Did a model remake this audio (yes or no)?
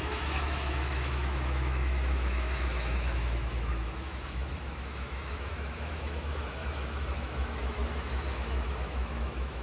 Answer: yes